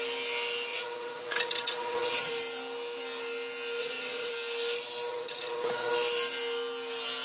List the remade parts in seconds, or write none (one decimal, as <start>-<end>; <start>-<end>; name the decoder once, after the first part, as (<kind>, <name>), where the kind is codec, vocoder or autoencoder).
0.7-2.3 (vocoder, WaveNeXt); 3.8-4.3; 5.1-5.9